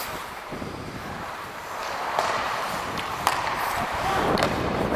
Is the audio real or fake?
fake